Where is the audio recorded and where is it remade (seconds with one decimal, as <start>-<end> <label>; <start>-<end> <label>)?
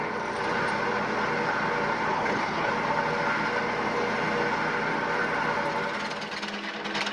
0.0-2.1 recorded; 2.1-2.7 remade; 2.7-7.1 recorded